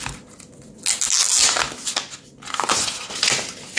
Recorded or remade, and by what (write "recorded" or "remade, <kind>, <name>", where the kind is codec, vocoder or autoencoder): recorded